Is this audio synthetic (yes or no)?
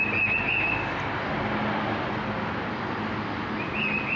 no